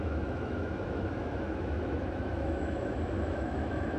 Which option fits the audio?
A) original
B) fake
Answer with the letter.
B